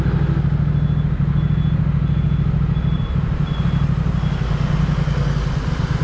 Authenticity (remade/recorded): recorded